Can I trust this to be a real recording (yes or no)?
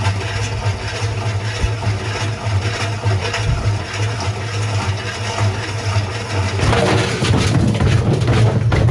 yes